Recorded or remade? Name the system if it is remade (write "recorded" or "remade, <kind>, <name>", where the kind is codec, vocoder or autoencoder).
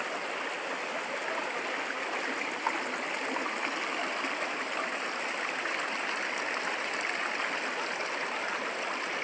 recorded